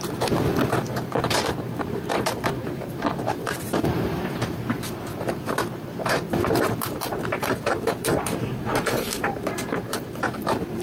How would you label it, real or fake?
fake